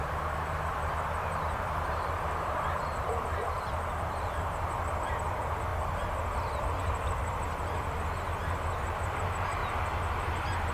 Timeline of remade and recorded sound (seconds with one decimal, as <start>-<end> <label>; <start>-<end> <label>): 0.0-5.7 remade; 5.7-6.6 recorded; 6.6-9.6 remade; 9.6-10.7 recorded

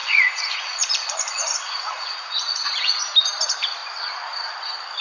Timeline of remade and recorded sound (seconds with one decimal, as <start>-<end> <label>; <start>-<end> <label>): 0.0-3.0 remade; 3.0-5.0 recorded